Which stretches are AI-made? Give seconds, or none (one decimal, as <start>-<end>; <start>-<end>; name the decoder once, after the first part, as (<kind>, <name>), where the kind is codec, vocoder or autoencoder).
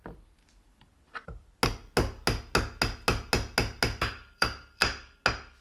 0.0-0.9 (vocoder, BigVGAN v2); 4.1-4.8